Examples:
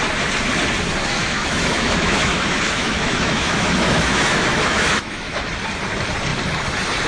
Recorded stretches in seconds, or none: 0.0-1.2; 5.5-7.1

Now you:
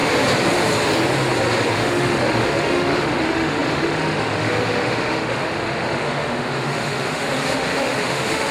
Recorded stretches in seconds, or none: 0.0-1.7

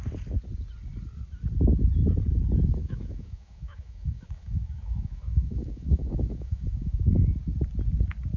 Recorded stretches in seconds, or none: 0.0-2.8; 7.3-8.4

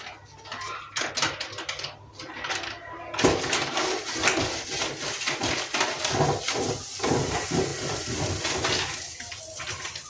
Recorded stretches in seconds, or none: 0.0-10.1

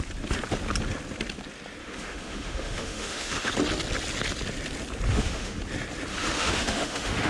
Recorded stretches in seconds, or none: 0.0-1.8; 3.5-5.1; 5.6-6.1

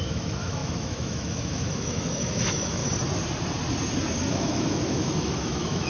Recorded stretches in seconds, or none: 2.8-4.3